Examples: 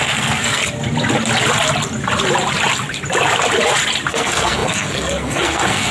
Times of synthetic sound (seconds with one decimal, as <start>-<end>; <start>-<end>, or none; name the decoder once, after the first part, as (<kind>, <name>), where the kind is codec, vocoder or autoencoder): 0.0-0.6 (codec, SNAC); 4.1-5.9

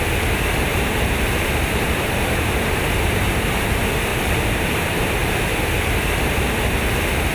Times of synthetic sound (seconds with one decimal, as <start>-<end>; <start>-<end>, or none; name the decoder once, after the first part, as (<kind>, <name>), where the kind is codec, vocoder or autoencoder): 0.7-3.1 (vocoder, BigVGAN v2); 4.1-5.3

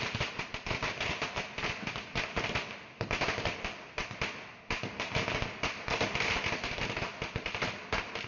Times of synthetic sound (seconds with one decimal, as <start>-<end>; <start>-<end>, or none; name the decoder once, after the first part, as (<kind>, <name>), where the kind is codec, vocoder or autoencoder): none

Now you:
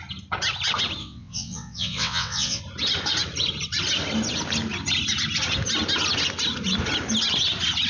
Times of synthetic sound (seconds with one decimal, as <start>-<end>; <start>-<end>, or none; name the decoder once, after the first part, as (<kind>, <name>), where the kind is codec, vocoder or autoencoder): 1.0-2.6 (vocoder, WaveNeXt)